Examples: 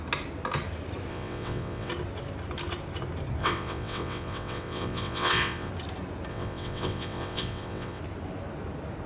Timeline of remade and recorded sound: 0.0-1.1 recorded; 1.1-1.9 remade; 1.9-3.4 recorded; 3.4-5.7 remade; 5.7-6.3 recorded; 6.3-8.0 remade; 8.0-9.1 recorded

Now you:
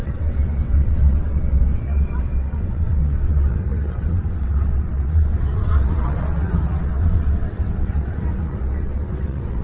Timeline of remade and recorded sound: 0.0-9.6 remade

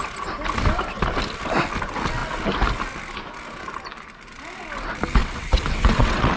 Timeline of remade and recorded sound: 0.0-5.2 recorded; 5.2-6.4 remade

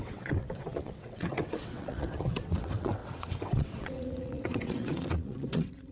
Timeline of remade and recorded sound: 0.0-5.9 remade

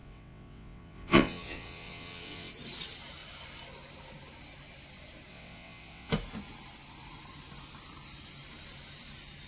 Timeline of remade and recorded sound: 0.0-2.5 remade; 2.5-5.3 recorded; 5.3-6.1 remade; 6.1-9.5 recorded